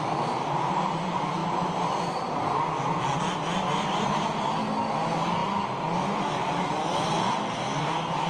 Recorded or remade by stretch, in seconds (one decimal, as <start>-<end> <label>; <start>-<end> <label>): 0.0-8.3 recorded